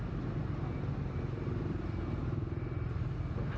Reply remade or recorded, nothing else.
recorded